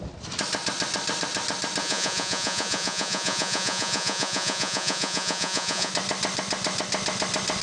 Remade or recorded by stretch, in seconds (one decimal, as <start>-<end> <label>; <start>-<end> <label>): 0.0-1.8 recorded; 1.8-5.9 remade; 5.9-7.6 recorded